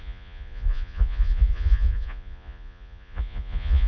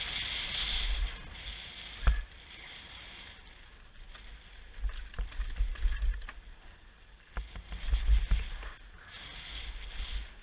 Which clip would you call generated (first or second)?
first